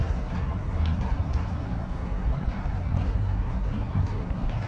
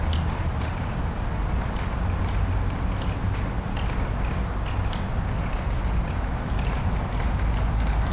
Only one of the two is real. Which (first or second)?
second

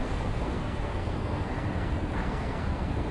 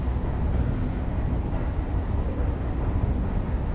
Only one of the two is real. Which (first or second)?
second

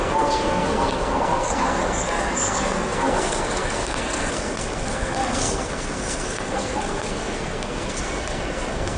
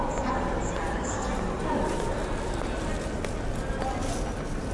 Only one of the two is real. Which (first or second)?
second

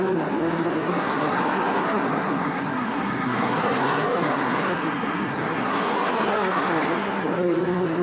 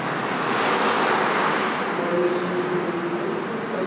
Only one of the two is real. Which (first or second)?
second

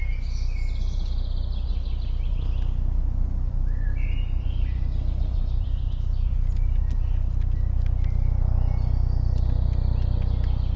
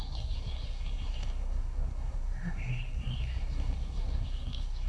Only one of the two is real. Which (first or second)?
first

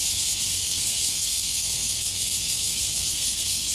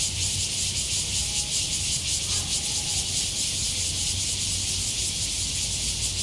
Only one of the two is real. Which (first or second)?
second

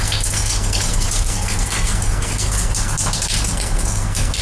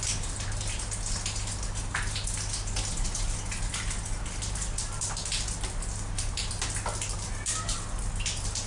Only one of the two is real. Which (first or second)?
second